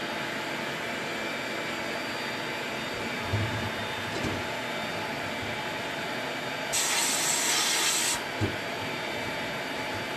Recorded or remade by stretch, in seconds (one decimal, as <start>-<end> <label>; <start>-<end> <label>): 0.0-10.2 recorded